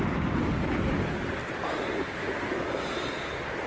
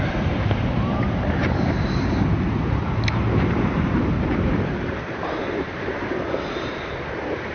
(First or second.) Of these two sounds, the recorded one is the first